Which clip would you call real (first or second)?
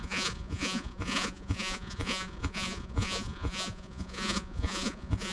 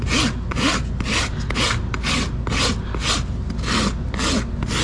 second